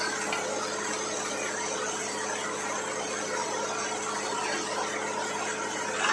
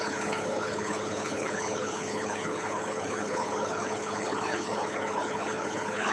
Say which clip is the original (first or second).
first